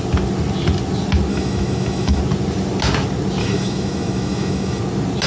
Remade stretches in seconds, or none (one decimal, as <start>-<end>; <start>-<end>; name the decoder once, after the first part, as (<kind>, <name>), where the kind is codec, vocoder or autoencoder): 1.3-2.2 (autoencoder, DAC-VAE); 3.4-4.8